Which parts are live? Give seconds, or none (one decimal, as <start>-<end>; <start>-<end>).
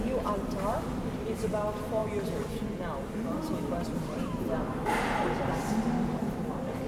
0.0-6.9